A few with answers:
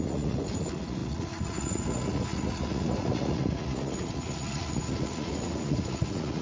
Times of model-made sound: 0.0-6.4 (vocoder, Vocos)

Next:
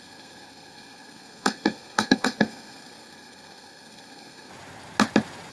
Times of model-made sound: 0.0-4.5 (codec, SNAC)

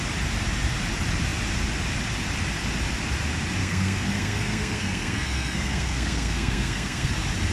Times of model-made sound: 3.6-7.1 (codec, SNAC)

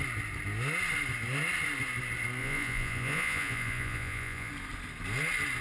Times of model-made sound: 2.4-4.5 (vocoder, Vocos)

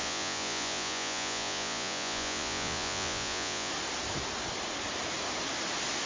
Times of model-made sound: 0.0-3.7 (vocoder, Vocos)

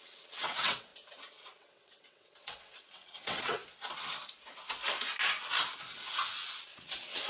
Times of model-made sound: 0.0-0.9 (vocoder, WaveNeXt); 1.6-3.6; 6.1-7.3